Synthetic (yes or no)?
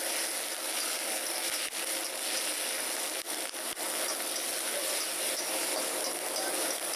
no